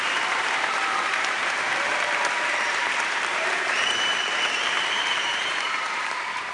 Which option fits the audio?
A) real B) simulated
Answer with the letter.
B